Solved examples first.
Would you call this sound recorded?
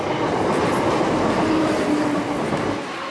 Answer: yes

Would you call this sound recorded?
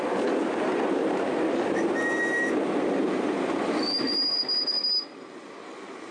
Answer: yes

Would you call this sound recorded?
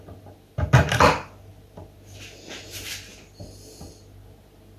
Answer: yes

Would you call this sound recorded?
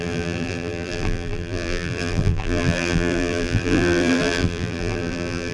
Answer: no